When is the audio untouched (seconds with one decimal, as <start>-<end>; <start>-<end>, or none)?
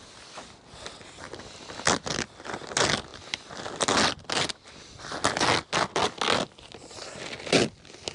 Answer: 0.0-8.1